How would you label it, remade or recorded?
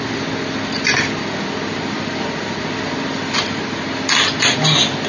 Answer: recorded